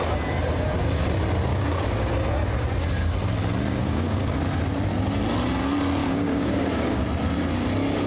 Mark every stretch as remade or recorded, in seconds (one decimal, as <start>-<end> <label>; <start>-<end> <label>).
0.0-1.5 recorded; 1.5-2.1 remade; 2.1-3.8 recorded; 3.8-4.4 remade; 4.4-6.0 recorded; 6.0-7.0 remade; 7.0-8.1 recorded